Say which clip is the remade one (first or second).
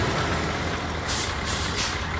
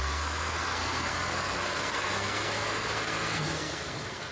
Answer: second